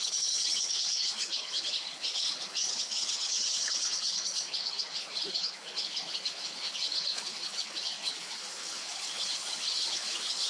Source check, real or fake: fake